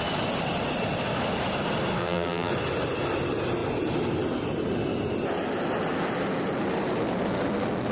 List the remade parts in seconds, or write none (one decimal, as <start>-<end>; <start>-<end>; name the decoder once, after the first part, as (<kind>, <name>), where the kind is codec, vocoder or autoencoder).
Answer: 2.0-2.5 (vocoder, BigVGAN v2)